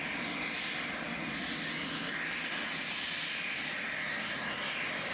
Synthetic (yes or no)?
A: no